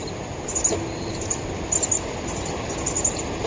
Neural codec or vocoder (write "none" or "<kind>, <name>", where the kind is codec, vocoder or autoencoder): none